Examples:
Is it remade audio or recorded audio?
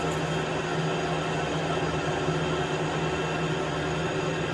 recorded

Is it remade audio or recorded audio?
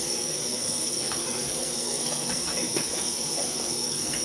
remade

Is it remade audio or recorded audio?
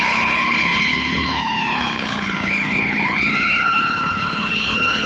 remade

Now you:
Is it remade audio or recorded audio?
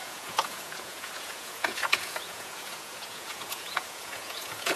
remade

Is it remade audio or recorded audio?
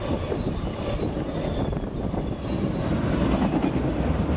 recorded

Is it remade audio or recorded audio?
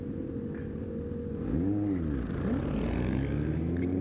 recorded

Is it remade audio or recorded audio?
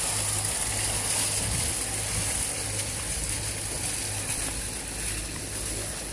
recorded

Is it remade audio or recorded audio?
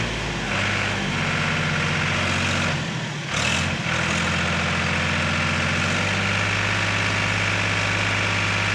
recorded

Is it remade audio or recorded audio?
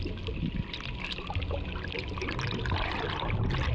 recorded